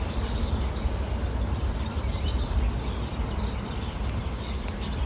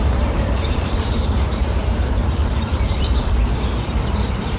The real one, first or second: first